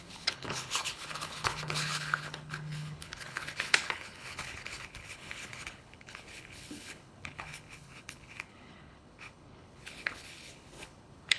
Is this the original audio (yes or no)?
no